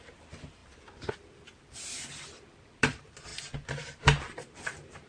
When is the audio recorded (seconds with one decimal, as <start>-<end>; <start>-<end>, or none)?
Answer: 0.6-1.1; 3.3-3.8